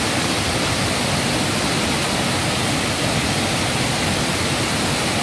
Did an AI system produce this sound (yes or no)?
no